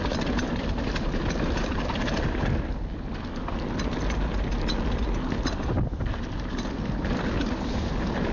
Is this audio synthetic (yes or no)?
no